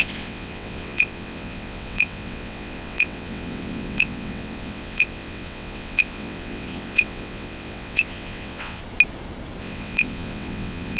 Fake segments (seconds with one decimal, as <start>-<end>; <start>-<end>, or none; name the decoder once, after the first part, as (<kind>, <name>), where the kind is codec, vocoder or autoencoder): 0.0-8.8 (vocoder, WaveNeXt); 9.6-11.0